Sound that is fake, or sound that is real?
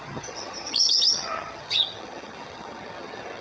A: fake